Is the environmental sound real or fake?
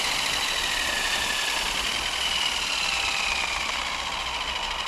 real